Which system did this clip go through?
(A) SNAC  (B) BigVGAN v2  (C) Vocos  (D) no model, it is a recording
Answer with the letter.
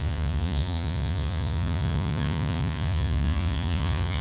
C